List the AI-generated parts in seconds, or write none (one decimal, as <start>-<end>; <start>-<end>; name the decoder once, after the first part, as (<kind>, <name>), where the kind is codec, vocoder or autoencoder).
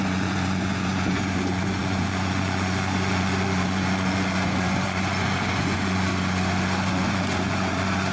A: 0.0-6.1 (vocoder, Vocos); 6.9-8.1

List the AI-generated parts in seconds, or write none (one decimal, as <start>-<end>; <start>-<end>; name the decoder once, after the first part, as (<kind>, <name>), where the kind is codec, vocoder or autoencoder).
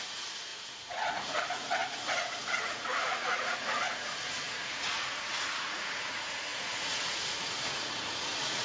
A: 0.0-8.6 (vocoder, Vocos)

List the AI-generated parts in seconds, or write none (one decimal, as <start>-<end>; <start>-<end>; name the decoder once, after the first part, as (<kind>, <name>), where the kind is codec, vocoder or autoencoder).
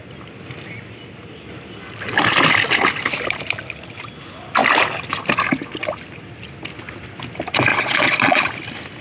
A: 7.7-8.4 (vocoder, Vocos)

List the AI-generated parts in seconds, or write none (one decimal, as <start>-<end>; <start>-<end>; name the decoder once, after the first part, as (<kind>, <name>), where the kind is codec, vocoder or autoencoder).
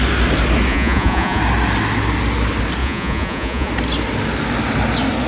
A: 0.7-1.4 (vocoder, Vocos); 2.8-3.7